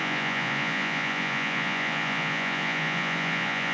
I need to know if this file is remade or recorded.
remade